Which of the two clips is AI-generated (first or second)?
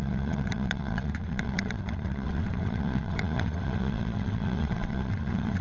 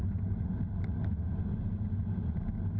first